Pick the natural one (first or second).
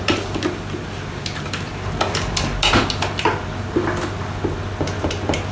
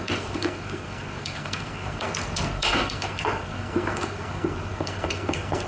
first